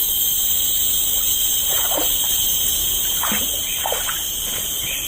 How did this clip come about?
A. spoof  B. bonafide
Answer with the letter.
B